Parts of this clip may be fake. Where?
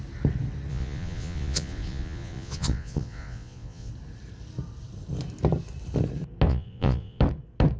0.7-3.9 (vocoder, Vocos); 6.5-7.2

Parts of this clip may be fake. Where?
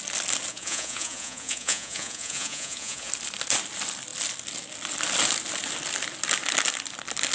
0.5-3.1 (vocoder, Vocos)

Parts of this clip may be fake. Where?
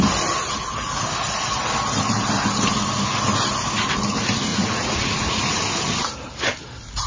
4.5-5.6 (vocoder, Vocos)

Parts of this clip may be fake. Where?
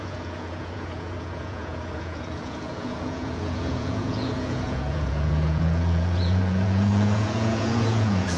0.0-8.4 (vocoder, Vocos)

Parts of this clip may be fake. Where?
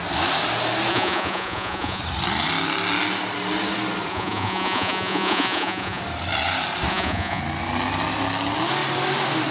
0.9-2.0 (vocoder, Vocos); 4.1-6.0; 6.9-7.4